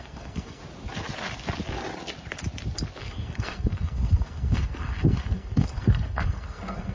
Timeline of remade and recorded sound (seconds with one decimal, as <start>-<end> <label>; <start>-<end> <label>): 0.0-0.6 remade; 0.6-3.0 recorded; 3.0-6.9 remade